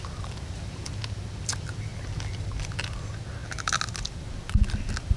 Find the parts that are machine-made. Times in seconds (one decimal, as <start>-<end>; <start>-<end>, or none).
none